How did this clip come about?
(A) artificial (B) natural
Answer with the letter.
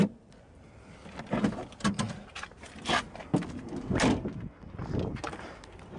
B